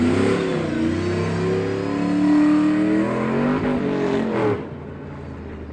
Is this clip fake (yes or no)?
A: no